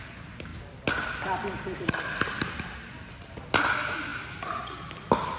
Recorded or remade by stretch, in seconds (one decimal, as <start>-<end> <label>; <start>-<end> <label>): 0.0-5.4 recorded